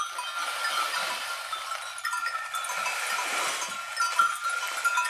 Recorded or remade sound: recorded